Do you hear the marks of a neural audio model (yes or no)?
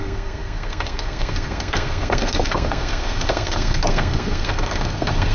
yes